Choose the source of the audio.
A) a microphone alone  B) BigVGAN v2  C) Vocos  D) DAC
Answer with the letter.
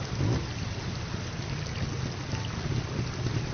A